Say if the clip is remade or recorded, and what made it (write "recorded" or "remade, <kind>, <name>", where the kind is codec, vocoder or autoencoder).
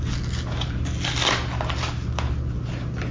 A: recorded